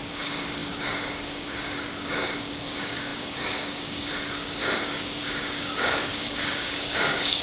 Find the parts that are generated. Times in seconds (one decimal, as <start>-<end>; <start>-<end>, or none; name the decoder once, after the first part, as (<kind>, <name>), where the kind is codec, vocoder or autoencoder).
0.0-7.4 (codec, DAC)